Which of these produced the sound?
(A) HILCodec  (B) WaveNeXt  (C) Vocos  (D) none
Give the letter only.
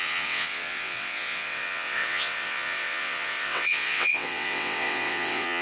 B